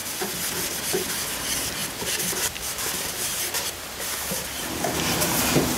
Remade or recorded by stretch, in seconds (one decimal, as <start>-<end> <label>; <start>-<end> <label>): 0.0-1.8 recorded; 1.8-5.3 remade; 5.3-5.8 recorded

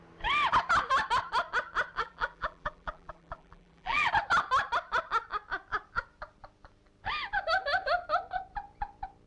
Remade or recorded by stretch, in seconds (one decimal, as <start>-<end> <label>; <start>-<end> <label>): 0.0-2.0 recorded; 2.0-4.1 remade; 4.1-9.3 recorded